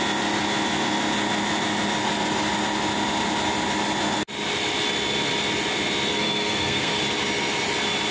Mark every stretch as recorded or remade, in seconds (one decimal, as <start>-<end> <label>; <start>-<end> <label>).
0.0-6.1 recorded; 6.1-7.0 remade; 7.0-8.1 recorded